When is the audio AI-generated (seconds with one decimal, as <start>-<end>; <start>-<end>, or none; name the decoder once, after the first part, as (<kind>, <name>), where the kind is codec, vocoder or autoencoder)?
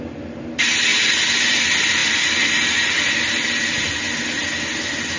none